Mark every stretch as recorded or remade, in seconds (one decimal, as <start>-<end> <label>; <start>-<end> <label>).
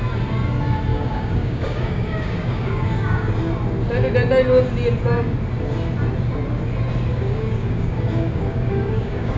0.0-0.9 recorded; 0.9-3.3 remade; 3.3-7.1 recorded; 7.1-9.4 remade